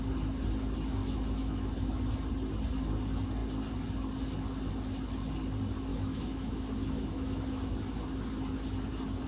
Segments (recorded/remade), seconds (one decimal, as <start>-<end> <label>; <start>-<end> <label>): 0.0-1.0 recorded; 1.0-2.0 remade; 2.0-5.9 recorded; 5.9-7.7 remade; 7.7-9.3 recorded

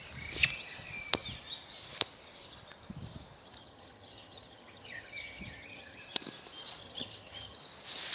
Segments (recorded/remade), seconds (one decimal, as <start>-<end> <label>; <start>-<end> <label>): 0.0-3.6 recorded; 3.6-6.0 remade; 6.0-6.8 recorded; 6.8-7.6 remade; 7.6-8.1 recorded

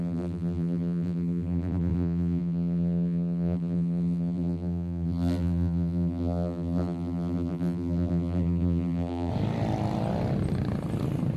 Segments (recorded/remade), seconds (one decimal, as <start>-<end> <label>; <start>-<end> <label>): 0.0-9.3 remade; 9.3-11.4 recorded

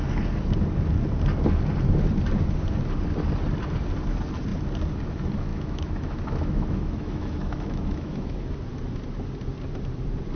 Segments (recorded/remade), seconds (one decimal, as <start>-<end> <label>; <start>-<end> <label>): 0.0-5.5 recorded; 5.5-8.5 remade; 8.5-10.4 recorded

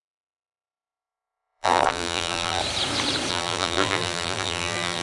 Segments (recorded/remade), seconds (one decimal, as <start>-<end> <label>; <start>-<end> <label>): 0.0-2.6 remade; 2.6-3.3 recorded; 3.3-5.0 remade

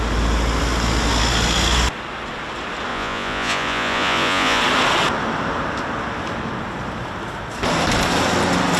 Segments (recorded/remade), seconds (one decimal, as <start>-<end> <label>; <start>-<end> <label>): 0.0-2.9 recorded; 2.9-4.6 remade; 4.6-8.8 recorded

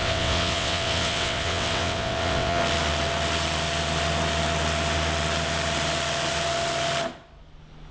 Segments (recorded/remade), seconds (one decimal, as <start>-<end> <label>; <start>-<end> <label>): 0.0-2.6 remade; 2.6-7.9 recorded

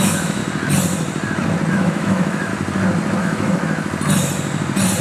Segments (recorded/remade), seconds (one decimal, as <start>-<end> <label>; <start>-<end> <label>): 0.0-0.4 remade; 0.4-1.7 recorded; 1.7-2.5 remade; 2.5-3.2 recorded; 3.2-3.6 remade; 3.6-5.0 recorded